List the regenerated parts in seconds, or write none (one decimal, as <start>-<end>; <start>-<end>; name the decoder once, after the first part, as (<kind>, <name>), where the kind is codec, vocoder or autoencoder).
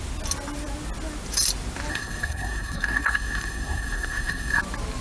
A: 1.9-4.6 (codec, SNAC)